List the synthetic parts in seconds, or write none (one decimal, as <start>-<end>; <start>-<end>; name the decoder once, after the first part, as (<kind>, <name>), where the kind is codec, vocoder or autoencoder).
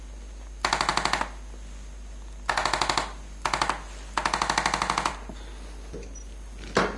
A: none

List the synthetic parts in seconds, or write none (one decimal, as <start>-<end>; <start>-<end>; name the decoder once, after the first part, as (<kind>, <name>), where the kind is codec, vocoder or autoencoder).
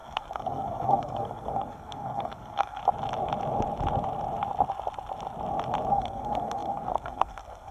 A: 0.0-2.8 (codec, SNAC); 5.9-7.7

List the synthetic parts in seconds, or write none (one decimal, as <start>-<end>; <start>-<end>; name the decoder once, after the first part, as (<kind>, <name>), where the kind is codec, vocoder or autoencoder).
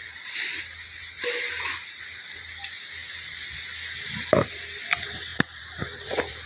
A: 0.0-0.6 (vocoder, BigVGAN v2); 5.3-6.5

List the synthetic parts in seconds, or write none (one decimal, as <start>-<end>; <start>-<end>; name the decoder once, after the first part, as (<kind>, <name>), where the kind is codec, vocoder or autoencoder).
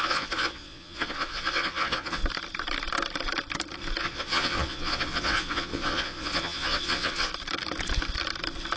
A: 0.0-2.2 (vocoder, Vocos); 4.0-7.3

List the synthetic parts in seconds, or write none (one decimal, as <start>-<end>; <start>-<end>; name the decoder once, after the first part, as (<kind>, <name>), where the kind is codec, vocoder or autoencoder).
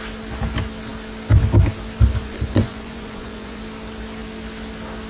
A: 2.2-3.6 (vocoder, Vocos)